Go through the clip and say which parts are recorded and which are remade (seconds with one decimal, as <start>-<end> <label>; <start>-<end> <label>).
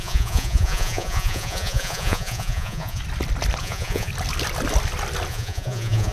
0.0-3.0 remade; 3.0-3.6 recorded; 3.6-4.1 remade; 4.1-5.3 recorded; 5.3-6.1 remade